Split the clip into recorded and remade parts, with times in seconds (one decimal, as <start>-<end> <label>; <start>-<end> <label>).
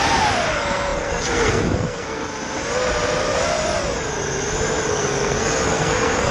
0.0-0.5 recorded; 0.5-2.3 remade; 2.3-4.9 recorded; 4.9-6.3 remade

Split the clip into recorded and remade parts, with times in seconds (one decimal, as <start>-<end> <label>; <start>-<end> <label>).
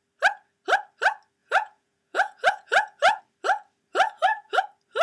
0.0-1.4 recorded; 1.4-3.2 remade; 3.2-3.9 recorded; 3.9-4.6 remade; 4.6-5.0 recorded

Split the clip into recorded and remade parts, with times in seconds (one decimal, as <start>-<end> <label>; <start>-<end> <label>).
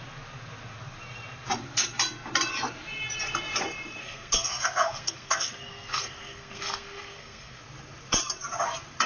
0.0-4.0 recorded; 4.0-7.6 remade; 7.6-9.1 recorded